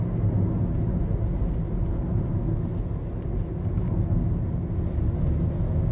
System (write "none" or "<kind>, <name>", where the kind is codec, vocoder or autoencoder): none